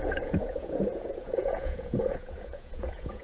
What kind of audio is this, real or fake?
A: fake